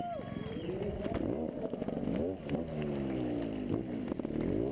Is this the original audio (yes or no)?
yes